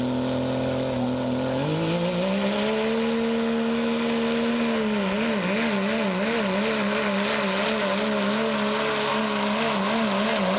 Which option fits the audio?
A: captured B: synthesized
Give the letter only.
A